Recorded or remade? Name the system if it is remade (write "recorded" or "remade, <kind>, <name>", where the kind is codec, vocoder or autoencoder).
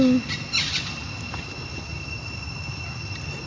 recorded